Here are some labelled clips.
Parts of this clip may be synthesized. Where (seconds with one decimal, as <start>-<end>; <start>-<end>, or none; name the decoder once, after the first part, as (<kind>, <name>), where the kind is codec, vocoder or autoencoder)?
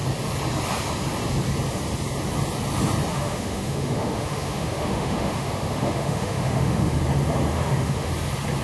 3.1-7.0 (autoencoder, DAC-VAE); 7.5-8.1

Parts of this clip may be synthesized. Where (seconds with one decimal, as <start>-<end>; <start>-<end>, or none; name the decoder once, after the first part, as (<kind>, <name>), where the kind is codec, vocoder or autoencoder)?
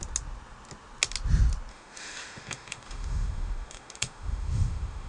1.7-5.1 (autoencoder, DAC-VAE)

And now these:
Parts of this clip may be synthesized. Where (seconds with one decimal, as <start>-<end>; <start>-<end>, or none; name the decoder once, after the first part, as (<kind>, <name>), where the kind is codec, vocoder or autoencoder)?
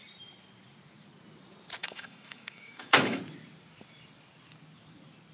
1.8-3.2 (autoencoder, DAC-VAE)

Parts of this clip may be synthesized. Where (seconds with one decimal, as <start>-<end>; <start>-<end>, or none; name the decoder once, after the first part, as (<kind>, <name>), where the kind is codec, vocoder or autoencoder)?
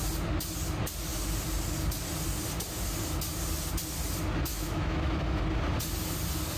4.5-5.4 (autoencoder, DAC-VAE)